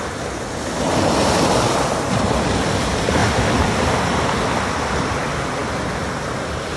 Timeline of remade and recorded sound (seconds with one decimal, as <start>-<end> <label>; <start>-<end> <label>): 0.0-6.8 recorded